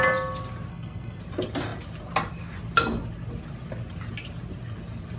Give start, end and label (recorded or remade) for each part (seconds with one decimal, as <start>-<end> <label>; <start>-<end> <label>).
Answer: 0.0-0.7 recorded; 0.7-1.2 remade; 1.2-5.2 recorded